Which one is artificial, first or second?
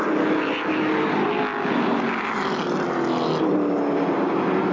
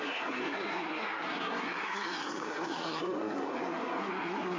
second